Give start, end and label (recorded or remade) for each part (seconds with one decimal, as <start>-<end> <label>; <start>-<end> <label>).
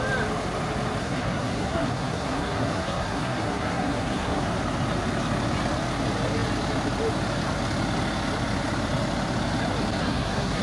0.0-1.0 recorded; 1.0-4.4 remade; 4.4-10.0 recorded; 10.0-10.6 remade